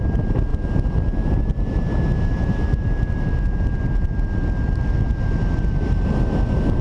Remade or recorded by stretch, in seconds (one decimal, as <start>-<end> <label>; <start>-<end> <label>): 0.0-6.8 recorded